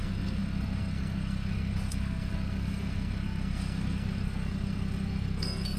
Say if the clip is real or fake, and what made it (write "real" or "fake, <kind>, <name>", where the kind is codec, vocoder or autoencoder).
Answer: fake, codec, SNAC